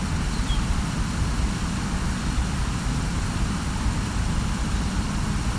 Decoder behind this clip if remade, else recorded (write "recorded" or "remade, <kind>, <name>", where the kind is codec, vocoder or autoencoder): recorded